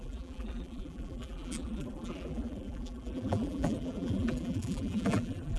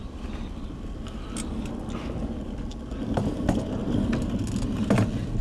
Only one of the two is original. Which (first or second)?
second